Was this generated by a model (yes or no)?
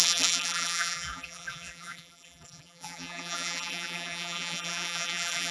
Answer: yes